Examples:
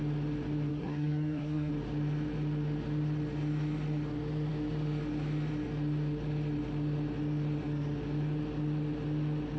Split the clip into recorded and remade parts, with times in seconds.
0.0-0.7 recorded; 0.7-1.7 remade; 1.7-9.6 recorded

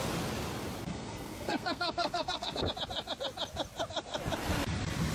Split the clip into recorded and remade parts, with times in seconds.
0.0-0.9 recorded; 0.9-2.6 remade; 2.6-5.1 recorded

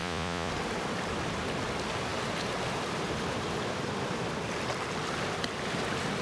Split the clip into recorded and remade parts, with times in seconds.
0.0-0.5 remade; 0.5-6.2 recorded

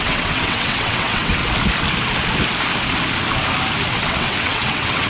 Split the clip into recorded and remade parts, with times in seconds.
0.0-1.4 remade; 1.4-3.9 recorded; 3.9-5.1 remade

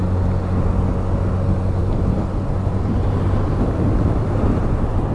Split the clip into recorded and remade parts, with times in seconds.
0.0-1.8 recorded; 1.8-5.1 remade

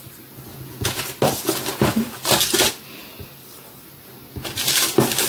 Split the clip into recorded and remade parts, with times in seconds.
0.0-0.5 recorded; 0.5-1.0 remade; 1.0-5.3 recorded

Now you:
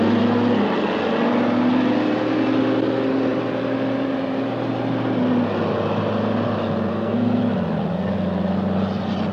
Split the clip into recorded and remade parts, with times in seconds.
0.0-6.9 recorded; 6.9-7.4 remade; 7.4-9.3 recorded

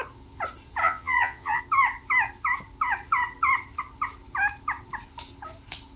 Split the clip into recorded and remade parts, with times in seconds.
0.0-0.8 recorded; 0.8-1.6 remade; 1.6-6.0 recorded